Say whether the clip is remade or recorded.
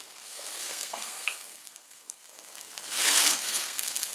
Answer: remade